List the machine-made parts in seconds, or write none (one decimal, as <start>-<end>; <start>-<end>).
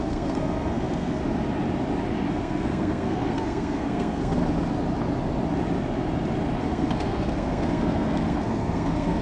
0.0-1.2; 2.3-4.4; 6.6-9.2